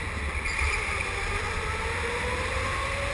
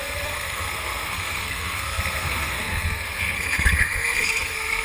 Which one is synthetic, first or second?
second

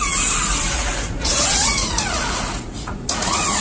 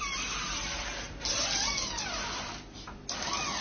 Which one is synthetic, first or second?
first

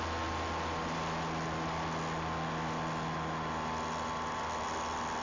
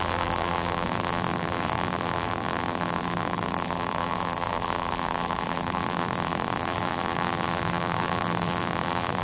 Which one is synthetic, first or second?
second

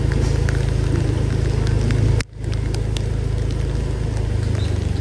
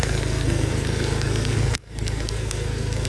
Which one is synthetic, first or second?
second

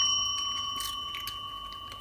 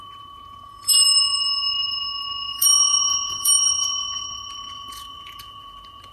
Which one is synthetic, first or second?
second